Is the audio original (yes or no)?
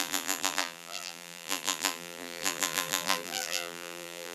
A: no